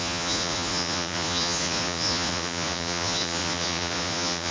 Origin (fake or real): fake